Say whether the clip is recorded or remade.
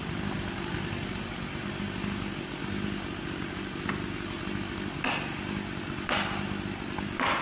recorded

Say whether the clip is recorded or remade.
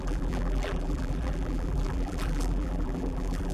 remade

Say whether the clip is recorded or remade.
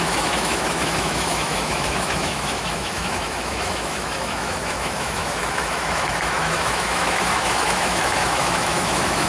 remade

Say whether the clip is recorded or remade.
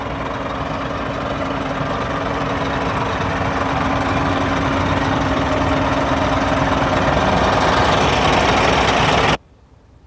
recorded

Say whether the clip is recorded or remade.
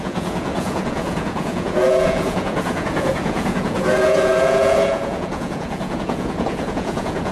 remade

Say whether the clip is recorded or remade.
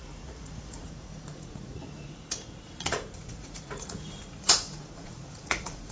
remade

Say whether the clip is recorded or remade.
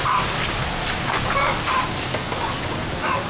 recorded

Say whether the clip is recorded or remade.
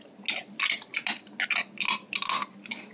recorded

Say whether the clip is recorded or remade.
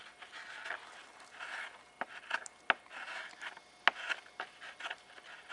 recorded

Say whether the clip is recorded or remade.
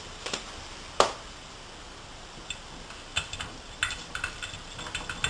recorded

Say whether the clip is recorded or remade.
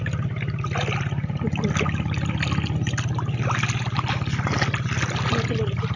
recorded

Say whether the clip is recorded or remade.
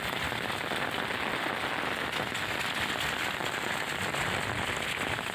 recorded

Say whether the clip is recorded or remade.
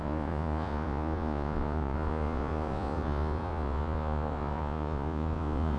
remade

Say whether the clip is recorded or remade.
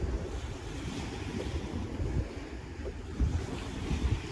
recorded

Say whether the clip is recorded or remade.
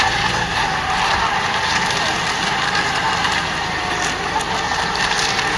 recorded